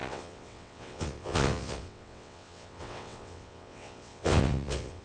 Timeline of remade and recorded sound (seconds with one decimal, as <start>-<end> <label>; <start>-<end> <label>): 0.0-5.0 remade